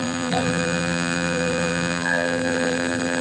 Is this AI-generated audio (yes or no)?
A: yes